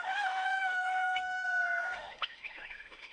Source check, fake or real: fake